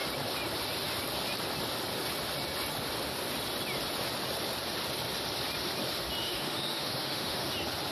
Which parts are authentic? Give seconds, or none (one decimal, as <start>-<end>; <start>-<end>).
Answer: 0.0-6.2; 7.5-7.9